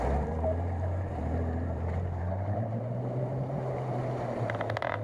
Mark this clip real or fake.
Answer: fake